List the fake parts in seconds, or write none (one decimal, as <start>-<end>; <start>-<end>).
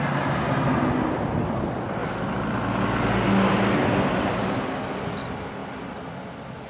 none